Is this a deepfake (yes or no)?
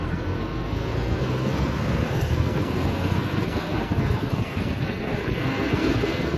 yes